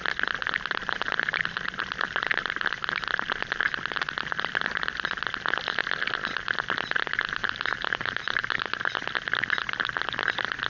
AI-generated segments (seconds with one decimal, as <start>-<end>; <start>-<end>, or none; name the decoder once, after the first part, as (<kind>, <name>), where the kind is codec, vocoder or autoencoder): 7.4-9.1 (vocoder, BigVGAN v2)